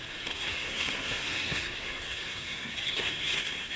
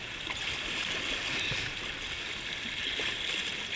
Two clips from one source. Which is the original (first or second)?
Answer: second